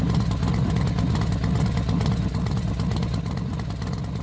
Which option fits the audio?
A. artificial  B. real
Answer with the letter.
B